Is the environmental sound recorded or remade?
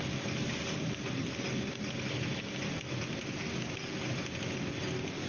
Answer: recorded